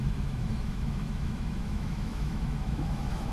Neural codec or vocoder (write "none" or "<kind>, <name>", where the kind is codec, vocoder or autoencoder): autoencoder, DAC-VAE